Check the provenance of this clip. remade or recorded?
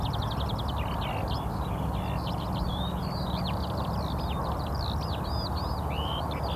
recorded